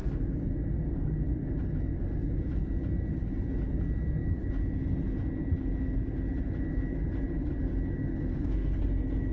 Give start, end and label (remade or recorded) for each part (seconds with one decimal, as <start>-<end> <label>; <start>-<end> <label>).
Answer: 0.0-8.3 recorded; 8.3-8.9 remade; 8.9-9.3 recorded